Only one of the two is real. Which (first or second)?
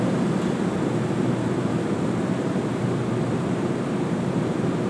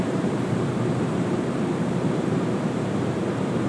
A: first